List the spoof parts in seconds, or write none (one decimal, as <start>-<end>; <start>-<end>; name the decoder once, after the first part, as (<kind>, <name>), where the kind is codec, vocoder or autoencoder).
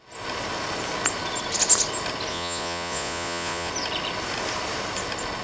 2.3-3.7 (vocoder, Vocos)